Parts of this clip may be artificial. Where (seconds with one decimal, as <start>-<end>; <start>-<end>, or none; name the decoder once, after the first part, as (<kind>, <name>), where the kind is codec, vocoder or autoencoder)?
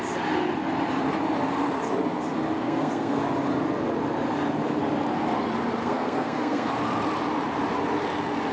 2.6-3.2 (codec, SNAC); 5.8-6.7